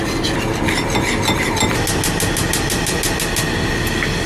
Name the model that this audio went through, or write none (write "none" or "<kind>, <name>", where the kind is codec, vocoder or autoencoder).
none